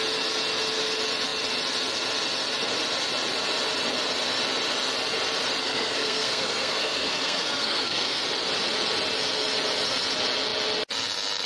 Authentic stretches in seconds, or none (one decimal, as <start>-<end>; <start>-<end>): 0.0-5.6; 8.2-11.5